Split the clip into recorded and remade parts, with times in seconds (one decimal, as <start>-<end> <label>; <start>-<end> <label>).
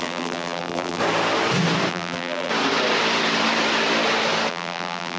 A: 0.0-1.0 remade; 1.0-1.9 recorded; 1.9-2.5 remade; 2.5-4.5 recorded; 4.5-5.2 remade